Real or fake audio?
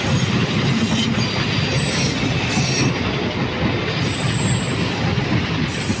real